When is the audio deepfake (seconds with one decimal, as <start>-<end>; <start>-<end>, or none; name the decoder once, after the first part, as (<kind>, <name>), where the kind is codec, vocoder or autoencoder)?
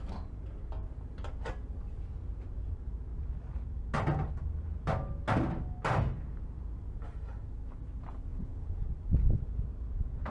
8.3-8.8 (vocoder, Vocos)